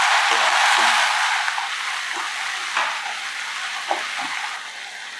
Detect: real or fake real